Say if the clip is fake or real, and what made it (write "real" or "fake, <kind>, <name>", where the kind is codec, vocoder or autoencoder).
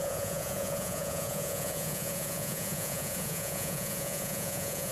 fake, vocoder, Vocos